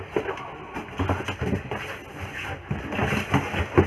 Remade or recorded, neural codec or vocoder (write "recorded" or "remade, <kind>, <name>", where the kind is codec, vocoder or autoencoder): recorded